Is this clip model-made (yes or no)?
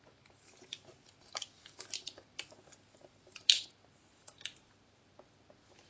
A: no